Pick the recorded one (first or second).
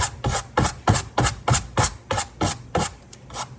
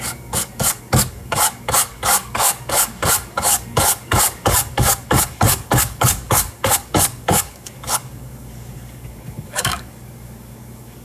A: first